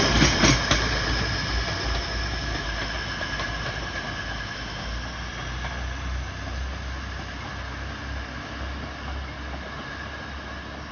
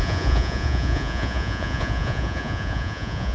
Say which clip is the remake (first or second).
second